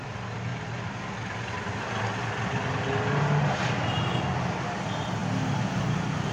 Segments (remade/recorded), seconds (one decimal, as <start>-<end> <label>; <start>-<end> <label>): 0.0-0.5 recorded; 0.5-1.7 remade; 1.7-6.3 recorded